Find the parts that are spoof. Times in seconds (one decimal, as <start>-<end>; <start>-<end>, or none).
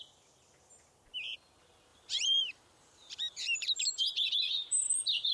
1.9-4.3